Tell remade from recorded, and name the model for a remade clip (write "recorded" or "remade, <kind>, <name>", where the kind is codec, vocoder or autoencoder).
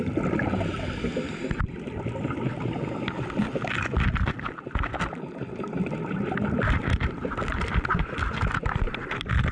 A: recorded